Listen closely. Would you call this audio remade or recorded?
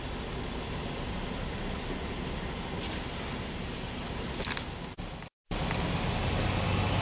recorded